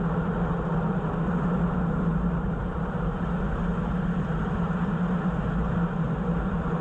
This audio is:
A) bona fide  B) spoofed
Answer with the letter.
A